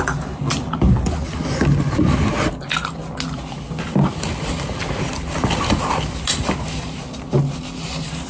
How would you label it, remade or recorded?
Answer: recorded